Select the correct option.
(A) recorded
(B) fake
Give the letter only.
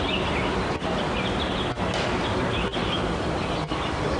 A